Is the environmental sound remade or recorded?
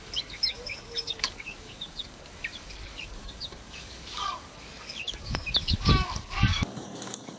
remade